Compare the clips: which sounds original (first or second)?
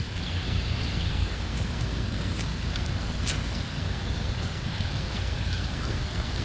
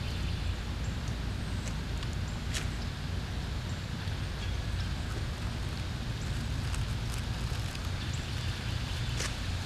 second